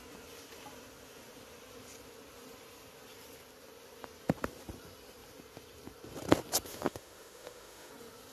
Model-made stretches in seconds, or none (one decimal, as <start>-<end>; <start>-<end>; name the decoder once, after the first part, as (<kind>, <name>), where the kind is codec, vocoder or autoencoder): 6.7-7.9 (autoencoder, DAC-VAE)